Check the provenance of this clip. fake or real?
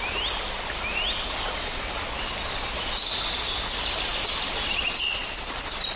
real